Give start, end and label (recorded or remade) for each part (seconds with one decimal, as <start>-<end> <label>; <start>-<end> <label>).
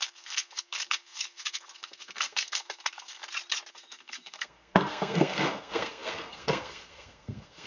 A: 0.0-3.2 remade; 3.2-3.7 recorded; 3.7-7.7 remade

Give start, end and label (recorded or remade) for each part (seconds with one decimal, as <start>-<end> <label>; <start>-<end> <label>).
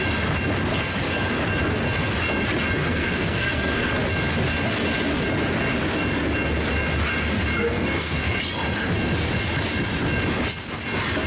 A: 0.0-2.8 recorded; 2.8-3.9 remade; 3.9-7.6 recorded; 7.6-8.4 remade; 8.4-11.3 recorded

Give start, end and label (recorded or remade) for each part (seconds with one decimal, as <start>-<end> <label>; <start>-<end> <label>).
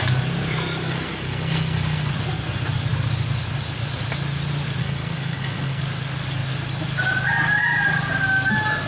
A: 0.0-0.8 recorded; 0.8-2.1 remade; 2.1-4.8 recorded; 4.8-5.8 remade; 5.8-8.9 recorded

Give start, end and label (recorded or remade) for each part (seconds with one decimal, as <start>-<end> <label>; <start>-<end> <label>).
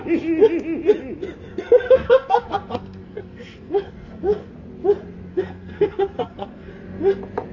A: 0.0-1.5 recorded; 1.5-4.5 remade; 4.5-5.3 recorded; 5.3-6.7 remade; 6.7-7.5 recorded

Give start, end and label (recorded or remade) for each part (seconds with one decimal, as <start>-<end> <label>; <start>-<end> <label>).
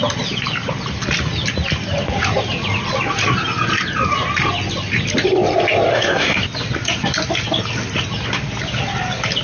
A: 0.0-5.9 recorded; 5.9-6.4 remade; 6.4-9.4 recorded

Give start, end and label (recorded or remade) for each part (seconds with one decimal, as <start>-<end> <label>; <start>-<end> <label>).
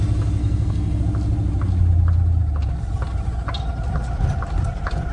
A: 0.0-0.4 recorded; 0.4-1.0 remade; 1.0-5.1 recorded